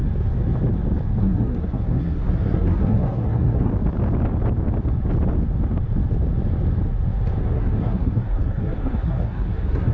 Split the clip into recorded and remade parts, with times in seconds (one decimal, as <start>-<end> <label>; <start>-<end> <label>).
0.0-1.2 recorded; 1.2-3.7 remade; 3.7-7.4 recorded; 7.4-9.9 remade